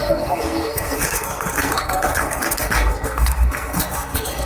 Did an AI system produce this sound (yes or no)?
yes